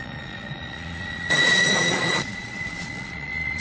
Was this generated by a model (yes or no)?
yes